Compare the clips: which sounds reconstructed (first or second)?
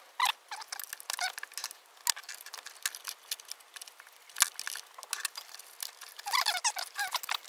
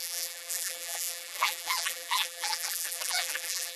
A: second